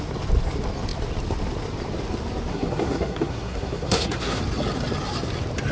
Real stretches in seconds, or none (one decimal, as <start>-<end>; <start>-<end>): 0.0-2.5; 4.4-5.7